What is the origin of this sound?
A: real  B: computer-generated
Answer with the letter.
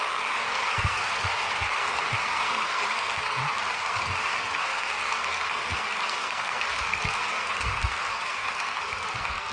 B